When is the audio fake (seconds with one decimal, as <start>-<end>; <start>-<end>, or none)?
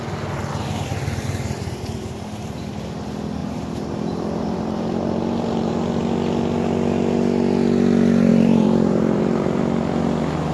0.5-2.7; 3.4-5.7; 8.3-9.6